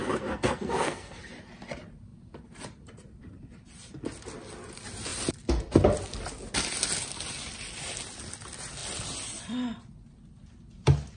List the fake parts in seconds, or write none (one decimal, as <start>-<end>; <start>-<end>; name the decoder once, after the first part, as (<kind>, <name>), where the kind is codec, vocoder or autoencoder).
0.0-1.2 (codec, SNAC)

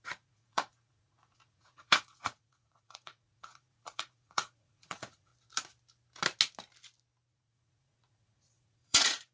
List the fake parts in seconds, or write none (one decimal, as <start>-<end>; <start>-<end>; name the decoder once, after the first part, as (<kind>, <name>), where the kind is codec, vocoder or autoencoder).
0.0-5.3 (vocoder, Vocos); 7.3-9.3

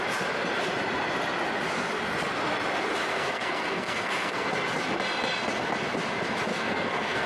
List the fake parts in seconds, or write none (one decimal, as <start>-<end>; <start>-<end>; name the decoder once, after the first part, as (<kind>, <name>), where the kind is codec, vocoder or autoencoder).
3.1-4.5 (codec, SNAC); 6.5-7.3

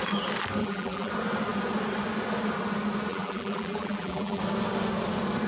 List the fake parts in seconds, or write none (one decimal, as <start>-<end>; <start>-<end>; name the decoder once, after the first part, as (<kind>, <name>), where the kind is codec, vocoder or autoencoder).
0.6-1.1 (vocoder, BigVGAN v2); 3.1-4.4